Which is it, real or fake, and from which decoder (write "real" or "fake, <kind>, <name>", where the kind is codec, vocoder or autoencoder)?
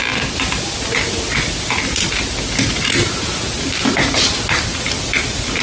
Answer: real